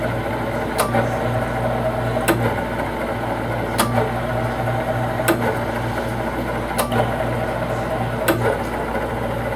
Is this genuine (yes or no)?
yes